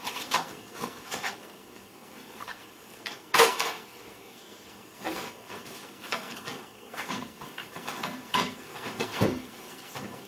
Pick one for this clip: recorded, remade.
remade